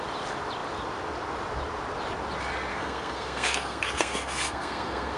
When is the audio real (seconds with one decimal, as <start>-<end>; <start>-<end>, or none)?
0.0-2.7